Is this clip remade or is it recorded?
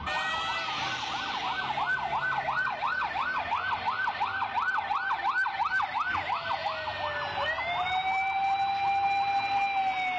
recorded